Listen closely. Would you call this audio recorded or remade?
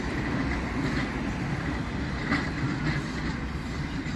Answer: recorded